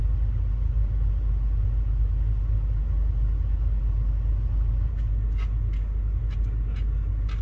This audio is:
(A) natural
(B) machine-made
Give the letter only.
A